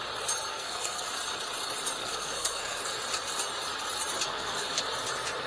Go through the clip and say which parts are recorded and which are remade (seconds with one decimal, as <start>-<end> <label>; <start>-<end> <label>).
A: 0.0-0.5 recorded; 0.5-1.0 remade; 1.0-2.0 recorded; 2.0-2.8 remade; 2.8-4.3 recorded; 4.3-4.8 remade; 4.8-5.5 recorded